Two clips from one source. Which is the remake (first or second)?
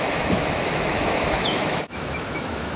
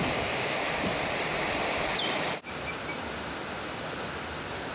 first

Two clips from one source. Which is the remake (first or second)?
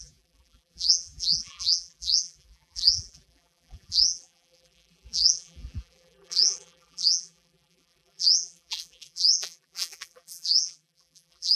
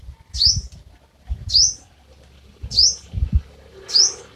first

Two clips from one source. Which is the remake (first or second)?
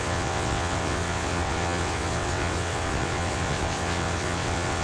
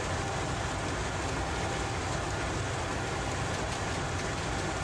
first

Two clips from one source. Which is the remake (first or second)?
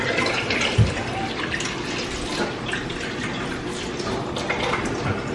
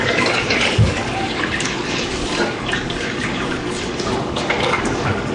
second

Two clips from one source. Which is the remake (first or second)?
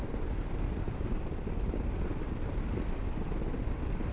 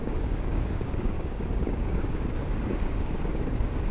second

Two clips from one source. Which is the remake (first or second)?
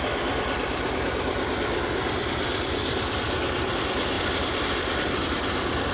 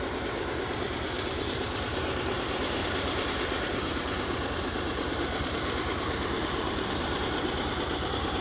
second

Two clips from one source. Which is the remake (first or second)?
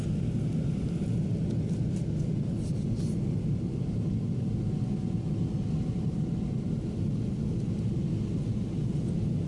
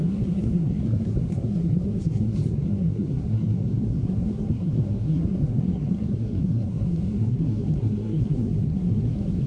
second